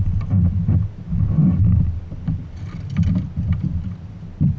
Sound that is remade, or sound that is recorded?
recorded